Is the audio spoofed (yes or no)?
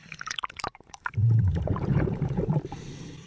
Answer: yes